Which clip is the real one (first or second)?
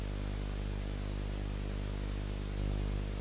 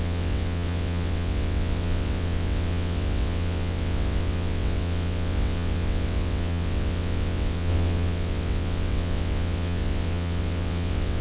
first